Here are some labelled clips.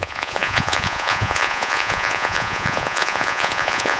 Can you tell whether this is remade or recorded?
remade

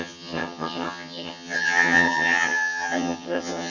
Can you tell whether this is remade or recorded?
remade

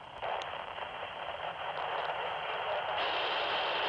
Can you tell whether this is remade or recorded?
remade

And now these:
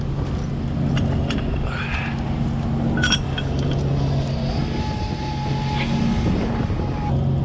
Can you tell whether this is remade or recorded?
recorded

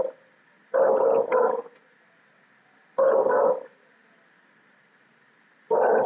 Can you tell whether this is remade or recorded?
recorded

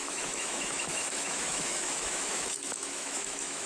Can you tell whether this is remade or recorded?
remade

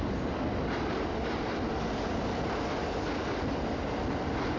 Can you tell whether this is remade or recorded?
recorded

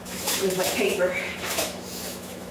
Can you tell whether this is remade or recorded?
remade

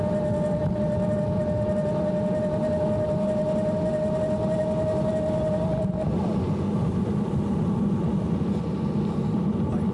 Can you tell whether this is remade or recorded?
recorded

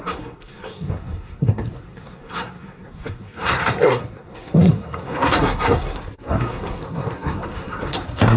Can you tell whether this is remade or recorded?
remade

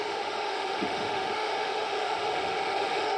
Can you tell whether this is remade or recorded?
remade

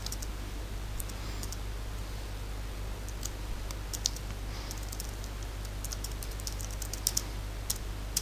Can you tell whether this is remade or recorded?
recorded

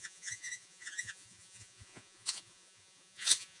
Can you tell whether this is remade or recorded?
remade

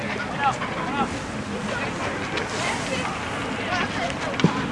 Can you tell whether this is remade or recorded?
recorded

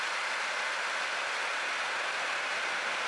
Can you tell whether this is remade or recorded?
recorded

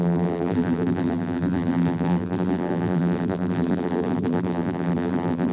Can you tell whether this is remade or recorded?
remade